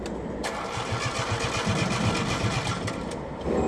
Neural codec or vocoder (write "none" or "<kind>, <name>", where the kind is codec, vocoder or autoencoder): none